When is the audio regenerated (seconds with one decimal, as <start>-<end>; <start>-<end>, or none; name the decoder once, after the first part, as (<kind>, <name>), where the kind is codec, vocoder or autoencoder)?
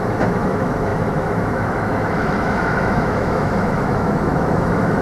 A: 0.0-5.0 (autoencoder, DAC-VAE)